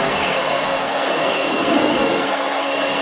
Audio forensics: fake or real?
fake